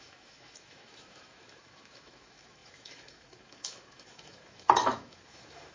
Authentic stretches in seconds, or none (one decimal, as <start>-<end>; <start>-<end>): none